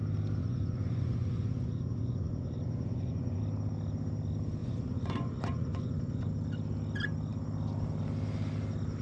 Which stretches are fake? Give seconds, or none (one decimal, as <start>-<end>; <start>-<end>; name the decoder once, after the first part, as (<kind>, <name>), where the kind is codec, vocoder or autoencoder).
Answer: 0.4-3.4 (vocoder, Vocos); 4.6-6.3